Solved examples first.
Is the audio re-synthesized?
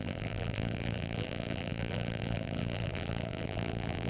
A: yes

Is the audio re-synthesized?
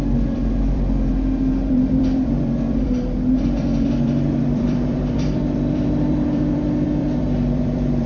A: yes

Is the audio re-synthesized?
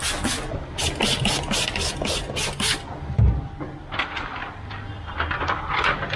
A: no